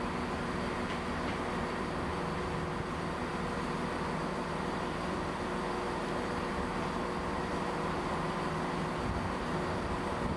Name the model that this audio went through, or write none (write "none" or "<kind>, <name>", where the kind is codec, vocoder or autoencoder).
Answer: none